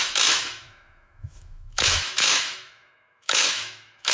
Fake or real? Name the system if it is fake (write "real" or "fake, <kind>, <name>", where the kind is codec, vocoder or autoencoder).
fake, autoencoder, DAC-VAE